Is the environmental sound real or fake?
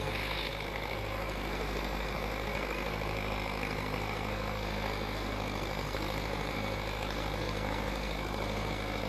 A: fake